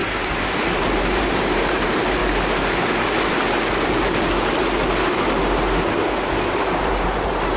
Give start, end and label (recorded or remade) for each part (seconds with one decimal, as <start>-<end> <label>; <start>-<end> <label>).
0.0-2.2 remade; 2.2-6.8 recorded; 6.8-7.6 remade